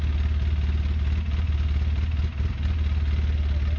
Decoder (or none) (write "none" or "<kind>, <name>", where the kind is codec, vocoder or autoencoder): none